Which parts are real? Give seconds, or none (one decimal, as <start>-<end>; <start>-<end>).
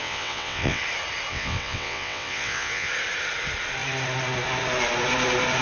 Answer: 0.8-1.3; 2.9-5.6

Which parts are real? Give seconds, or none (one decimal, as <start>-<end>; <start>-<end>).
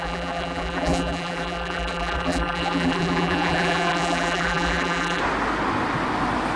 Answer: 5.2-6.6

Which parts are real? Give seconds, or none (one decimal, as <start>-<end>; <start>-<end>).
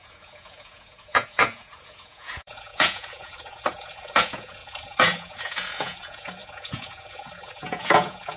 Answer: none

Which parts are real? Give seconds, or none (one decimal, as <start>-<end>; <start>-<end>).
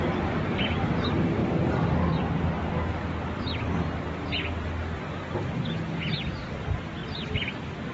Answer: 0.0-1.4; 5.2-7.0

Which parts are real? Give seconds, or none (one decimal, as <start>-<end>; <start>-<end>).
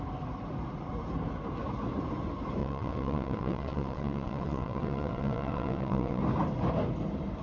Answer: 0.0-2.6; 6.2-7.4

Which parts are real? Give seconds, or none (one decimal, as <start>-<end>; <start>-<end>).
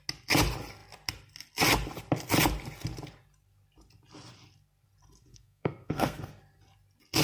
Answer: 0.0-5.3; 6.4-7.2